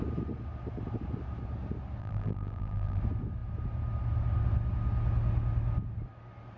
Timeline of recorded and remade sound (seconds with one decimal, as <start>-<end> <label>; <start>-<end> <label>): 0.0-2.0 recorded; 2.0-3.0 remade; 3.0-6.6 recorded